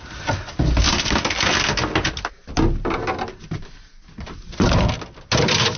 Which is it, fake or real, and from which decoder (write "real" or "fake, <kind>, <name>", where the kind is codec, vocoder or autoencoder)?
real